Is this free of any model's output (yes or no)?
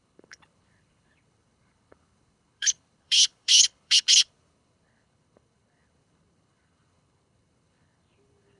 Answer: no